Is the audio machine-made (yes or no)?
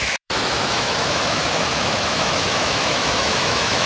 yes